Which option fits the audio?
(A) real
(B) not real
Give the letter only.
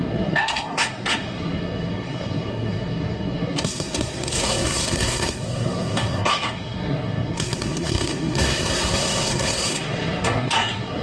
B